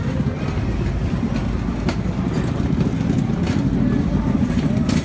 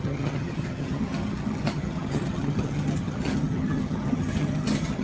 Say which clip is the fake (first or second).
second